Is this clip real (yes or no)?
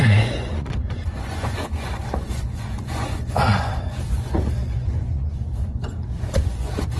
no